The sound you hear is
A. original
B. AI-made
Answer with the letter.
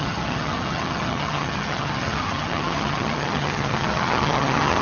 B